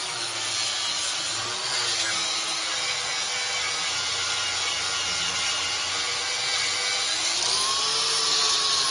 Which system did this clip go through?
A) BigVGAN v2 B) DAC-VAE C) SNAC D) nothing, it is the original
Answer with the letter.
D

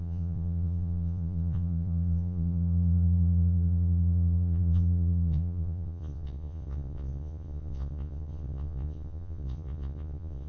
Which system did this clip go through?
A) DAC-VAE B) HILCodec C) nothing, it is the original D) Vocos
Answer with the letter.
D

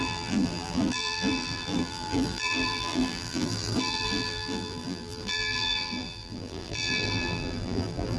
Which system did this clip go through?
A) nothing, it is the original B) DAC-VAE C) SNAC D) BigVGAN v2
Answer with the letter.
D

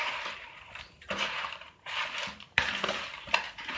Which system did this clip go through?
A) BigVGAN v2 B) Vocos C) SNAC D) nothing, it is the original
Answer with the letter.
A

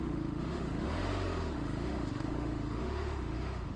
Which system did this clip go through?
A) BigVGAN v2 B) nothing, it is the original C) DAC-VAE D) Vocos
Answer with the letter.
C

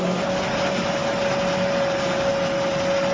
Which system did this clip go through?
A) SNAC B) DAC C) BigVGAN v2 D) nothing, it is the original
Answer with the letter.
D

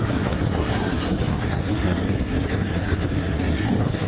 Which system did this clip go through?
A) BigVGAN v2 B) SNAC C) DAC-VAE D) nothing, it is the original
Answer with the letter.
B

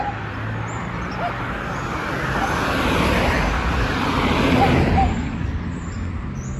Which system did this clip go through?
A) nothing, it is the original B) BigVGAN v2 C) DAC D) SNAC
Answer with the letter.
A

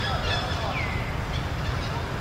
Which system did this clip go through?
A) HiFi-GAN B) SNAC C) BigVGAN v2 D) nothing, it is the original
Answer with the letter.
D